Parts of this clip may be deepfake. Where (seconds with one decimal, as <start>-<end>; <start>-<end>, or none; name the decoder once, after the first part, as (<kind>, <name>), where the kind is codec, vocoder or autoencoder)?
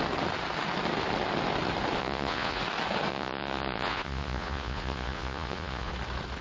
2.0-2.6 (vocoder, Vocos); 3.1-5.9